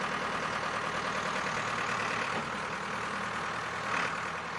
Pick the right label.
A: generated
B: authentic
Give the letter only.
B